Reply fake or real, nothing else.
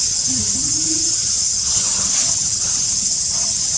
fake